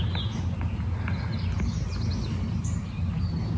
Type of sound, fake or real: real